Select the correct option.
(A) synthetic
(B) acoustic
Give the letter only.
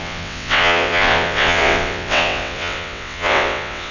A